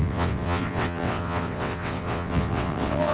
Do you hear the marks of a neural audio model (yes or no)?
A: yes